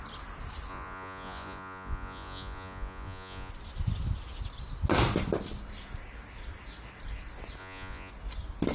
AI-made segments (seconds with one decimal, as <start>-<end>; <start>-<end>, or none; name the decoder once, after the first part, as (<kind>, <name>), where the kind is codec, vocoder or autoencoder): 0.7-3.5 (vocoder, Vocos); 7.6-8.1

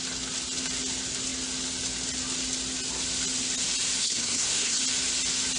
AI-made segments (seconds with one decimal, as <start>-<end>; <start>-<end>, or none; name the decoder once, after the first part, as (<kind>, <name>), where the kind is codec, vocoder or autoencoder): 4.0-4.8 (codec, SNAC)

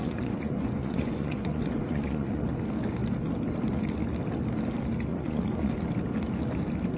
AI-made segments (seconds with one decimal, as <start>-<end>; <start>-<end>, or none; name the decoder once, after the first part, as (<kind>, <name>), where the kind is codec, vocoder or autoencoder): 0.0-2.4 (vocoder, Vocos); 5.1-5.7

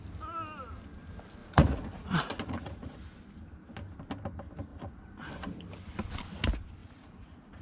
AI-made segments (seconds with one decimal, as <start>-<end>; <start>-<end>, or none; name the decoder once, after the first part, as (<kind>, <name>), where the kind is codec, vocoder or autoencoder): 1.4-3.0 (vocoder, Vocos); 4.7-5.2; 6.8-7.6

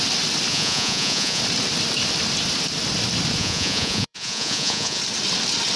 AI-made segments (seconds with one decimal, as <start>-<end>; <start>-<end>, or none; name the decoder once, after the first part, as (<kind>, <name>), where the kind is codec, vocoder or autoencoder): 0.5-1.4 (vocoder, Vocos); 3.4-5.0

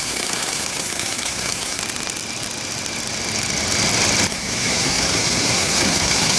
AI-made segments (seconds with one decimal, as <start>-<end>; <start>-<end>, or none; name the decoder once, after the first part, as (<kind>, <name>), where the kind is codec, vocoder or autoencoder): 0.0-1.8 (codec, SNAC); 4.3-6.4